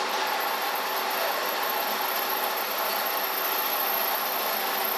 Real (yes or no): yes